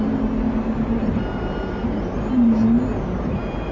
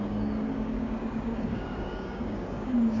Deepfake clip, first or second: second